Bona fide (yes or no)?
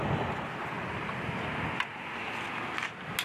yes